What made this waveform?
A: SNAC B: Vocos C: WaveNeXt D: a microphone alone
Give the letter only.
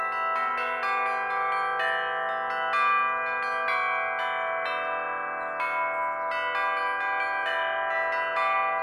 D